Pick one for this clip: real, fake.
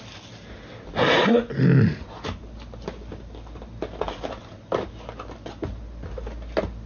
real